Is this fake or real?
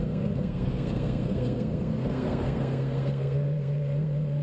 fake